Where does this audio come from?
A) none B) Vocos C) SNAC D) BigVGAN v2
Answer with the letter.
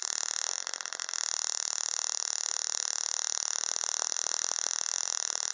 A